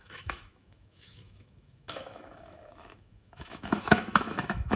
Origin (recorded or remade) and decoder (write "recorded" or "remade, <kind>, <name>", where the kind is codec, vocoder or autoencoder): remade, autoencoder, DAC-VAE